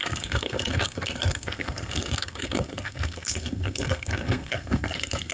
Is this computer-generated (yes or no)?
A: yes